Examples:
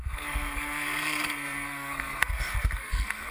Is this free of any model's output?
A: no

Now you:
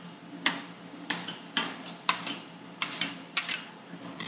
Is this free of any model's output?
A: yes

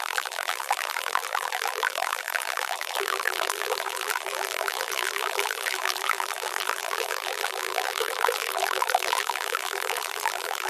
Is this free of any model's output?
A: no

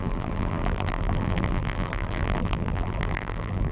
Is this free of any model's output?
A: no